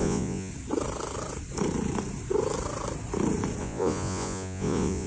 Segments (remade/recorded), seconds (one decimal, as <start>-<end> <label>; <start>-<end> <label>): 0.0-0.5 remade; 0.5-3.6 recorded; 3.6-5.1 remade